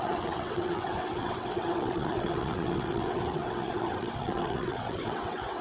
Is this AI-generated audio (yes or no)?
yes